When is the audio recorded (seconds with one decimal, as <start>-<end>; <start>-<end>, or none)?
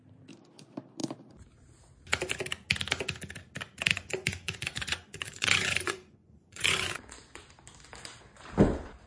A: 0.0-3.9; 7.5-9.1